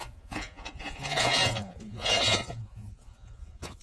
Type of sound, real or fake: fake